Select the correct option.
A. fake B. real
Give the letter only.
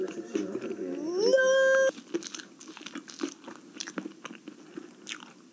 B